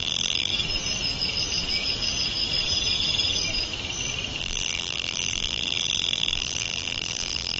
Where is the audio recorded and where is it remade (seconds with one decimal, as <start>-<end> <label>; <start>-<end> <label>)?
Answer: 0.0-0.5 remade; 0.5-4.4 recorded; 4.4-7.6 remade